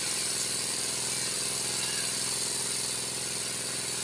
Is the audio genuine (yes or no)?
yes